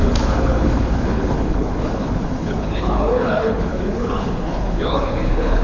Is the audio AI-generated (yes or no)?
yes